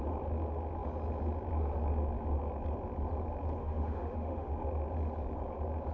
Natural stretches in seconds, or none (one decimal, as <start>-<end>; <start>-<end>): 0.0-3.6; 4.5-5.9